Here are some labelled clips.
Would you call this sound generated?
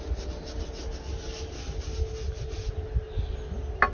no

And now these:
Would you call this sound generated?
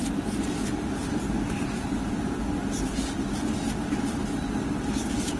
no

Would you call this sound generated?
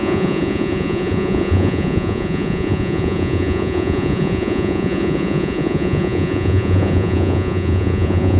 yes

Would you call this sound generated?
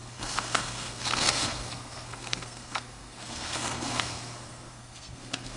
yes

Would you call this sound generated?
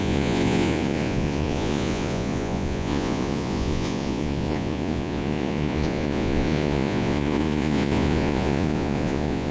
yes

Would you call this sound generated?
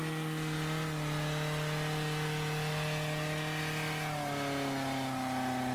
no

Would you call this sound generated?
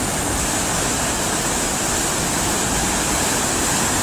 no